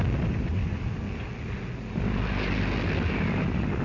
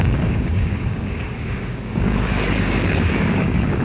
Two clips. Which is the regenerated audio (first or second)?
second